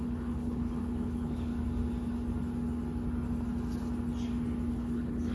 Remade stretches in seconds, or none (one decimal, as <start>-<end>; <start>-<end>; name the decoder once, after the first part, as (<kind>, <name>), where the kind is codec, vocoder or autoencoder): 0.0-1.5 (codec, HILCodec); 4.7-5.3